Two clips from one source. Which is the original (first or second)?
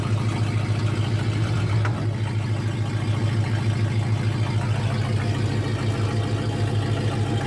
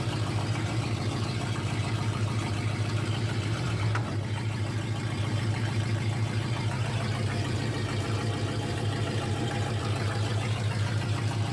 first